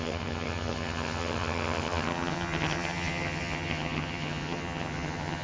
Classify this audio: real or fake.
fake